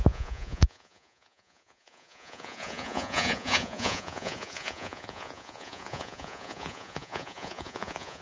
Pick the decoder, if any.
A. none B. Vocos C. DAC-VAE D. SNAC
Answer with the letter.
B